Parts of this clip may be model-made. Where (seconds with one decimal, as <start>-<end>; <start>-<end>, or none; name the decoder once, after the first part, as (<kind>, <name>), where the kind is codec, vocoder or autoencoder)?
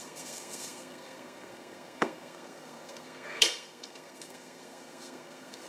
0.0-5.7 (codec, SNAC)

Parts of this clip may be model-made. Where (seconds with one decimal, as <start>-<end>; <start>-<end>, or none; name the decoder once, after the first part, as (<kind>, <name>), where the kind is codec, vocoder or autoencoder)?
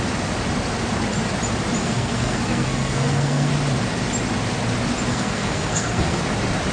1.8-3.5 (codec, SNAC); 5.1-6.2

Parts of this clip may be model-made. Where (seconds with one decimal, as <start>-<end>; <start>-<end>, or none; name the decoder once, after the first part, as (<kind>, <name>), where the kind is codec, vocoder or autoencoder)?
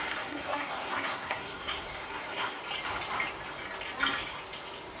0.0-2.6 (codec, SNAC)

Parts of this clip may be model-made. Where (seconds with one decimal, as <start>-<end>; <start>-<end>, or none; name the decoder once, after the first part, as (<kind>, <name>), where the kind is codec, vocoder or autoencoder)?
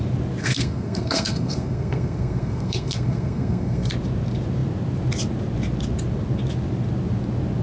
0.4-3.9 (codec, SNAC)